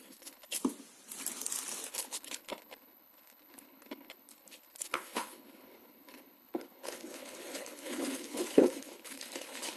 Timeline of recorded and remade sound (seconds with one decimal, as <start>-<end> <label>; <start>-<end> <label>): 0.0-0.6 remade; 0.6-1.9 recorded; 1.9-9.8 remade

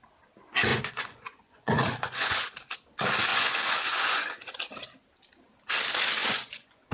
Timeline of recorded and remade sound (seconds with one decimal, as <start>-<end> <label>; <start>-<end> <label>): 0.0-0.7 recorded; 0.7-2.5 remade; 2.5-3.3 recorded; 3.3-4.4 remade; 4.4-6.2 recorded; 6.2-6.9 remade

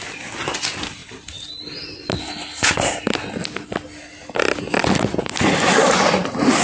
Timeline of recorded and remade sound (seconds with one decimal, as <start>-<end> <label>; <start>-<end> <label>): 0.0-6.6 recorded

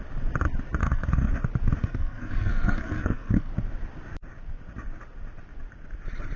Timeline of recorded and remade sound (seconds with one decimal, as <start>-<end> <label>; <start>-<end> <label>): 0.0-0.8 recorded; 0.8-1.3 remade; 1.3-1.8 recorded; 1.8-3.5 remade; 3.5-6.4 recorded

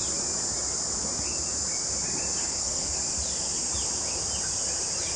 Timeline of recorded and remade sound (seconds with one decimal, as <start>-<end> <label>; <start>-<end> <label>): 0.0-2.4 recorded; 2.4-3.0 remade; 3.0-5.2 recorded